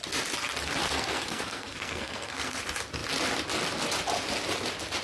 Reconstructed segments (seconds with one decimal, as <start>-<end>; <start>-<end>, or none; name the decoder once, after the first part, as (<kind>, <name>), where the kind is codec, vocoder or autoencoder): 0.8-2.6 (codec, SNAC)